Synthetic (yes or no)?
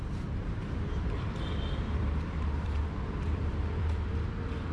yes